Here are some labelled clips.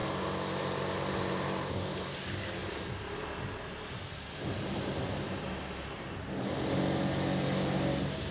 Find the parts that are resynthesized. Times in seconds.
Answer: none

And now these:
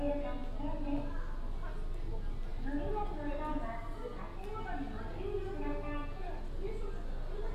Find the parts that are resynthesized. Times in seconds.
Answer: none

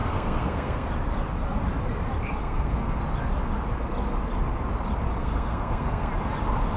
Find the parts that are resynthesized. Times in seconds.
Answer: 0.0-0.9 (codec, SNAC); 2.4-3.0; 5.2-6.1

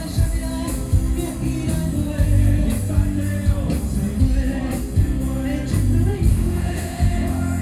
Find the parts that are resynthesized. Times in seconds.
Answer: 6.3-7.6 (autoencoder, DAC-VAE)

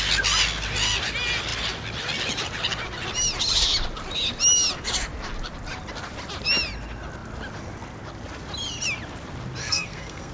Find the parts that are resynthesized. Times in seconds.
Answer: 9.6-10.3 (codec, SNAC)

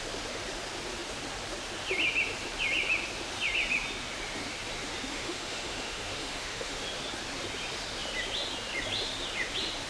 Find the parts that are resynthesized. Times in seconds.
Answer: 5.1-6.8 (autoencoder, DAC-VAE)